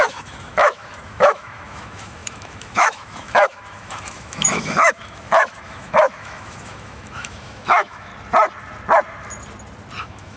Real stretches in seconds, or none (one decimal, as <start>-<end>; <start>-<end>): 8.1-10.0

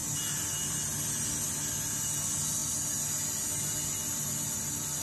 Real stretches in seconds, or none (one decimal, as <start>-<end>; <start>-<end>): 0.0-5.0